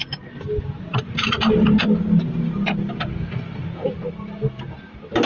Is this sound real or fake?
real